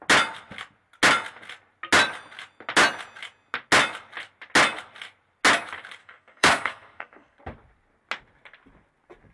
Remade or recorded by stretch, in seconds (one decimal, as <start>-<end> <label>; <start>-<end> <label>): 0.0-6.0 recorded; 6.0-7.4 remade; 7.4-9.3 recorded